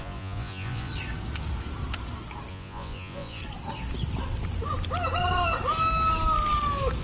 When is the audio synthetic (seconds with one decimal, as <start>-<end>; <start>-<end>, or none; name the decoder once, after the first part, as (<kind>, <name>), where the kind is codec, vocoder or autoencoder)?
0.0-0.9 (vocoder, Vocos); 2.5-3.4